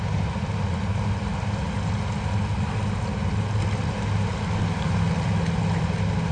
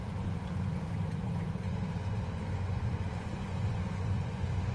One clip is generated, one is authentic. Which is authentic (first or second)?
first